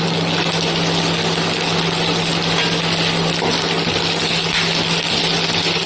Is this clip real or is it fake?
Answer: real